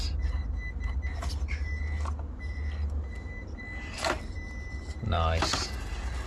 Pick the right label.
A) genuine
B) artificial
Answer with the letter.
A